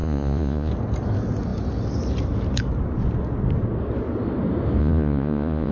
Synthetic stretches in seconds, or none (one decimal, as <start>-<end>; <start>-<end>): 0.0-0.7; 4.8-5.7